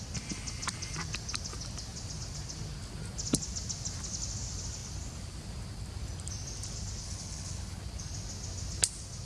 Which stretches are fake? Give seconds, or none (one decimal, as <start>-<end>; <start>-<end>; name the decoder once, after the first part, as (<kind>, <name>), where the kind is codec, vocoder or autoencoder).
7.0-7.8 (codec, HILCodec)